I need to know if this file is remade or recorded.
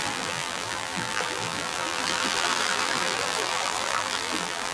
remade